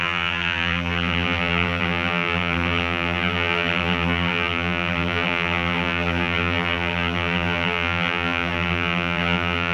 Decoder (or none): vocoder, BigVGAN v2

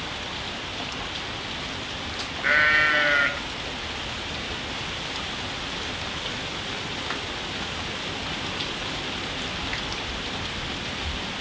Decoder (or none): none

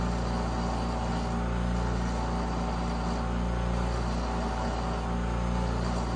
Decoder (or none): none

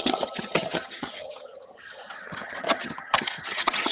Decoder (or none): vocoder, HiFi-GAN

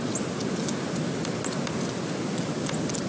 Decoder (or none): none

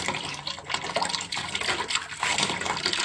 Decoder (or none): none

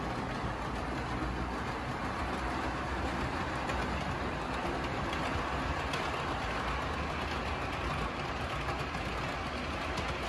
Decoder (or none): none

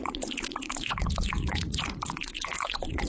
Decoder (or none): vocoder, Vocos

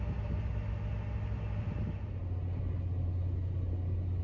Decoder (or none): none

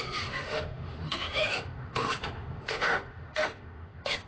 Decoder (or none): autoencoder, DAC-VAE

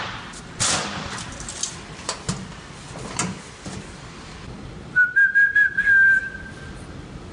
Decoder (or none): none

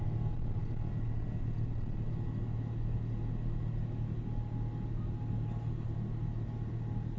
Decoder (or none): none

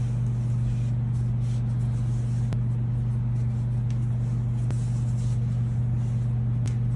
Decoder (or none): none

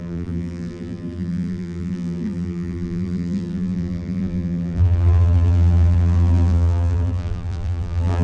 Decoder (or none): vocoder, BigVGAN v2